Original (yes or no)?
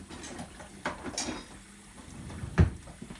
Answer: yes